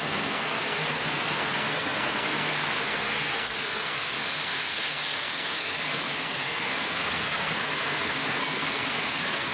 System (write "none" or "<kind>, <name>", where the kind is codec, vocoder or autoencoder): codec, SNAC